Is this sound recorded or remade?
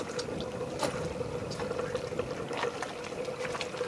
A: recorded